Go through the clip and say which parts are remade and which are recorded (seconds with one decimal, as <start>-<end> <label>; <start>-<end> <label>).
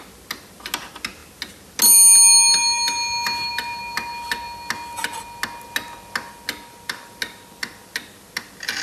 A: 0.0-8.8 recorded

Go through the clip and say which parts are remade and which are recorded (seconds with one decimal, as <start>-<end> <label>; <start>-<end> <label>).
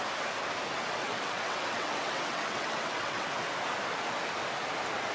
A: 0.0-1.0 recorded; 1.0-3.3 remade; 3.3-5.1 recorded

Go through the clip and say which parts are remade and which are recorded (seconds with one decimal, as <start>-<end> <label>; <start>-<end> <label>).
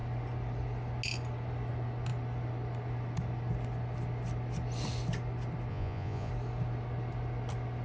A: 0.0-5.7 recorded; 5.7-6.3 remade; 6.3-7.8 recorded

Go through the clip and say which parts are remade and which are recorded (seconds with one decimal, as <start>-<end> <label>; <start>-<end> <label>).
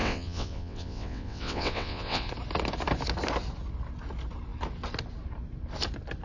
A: 0.0-2.3 remade; 2.3-6.2 recorded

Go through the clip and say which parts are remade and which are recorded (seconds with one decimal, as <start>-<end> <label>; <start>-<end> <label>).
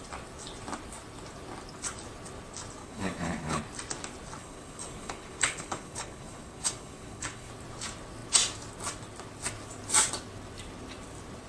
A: 0.0-2.8 recorded; 2.8-3.6 remade; 3.6-4.4 recorded; 4.4-7.5 remade; 7.5-11.5 recorded